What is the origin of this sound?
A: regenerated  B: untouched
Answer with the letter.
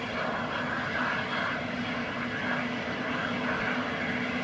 B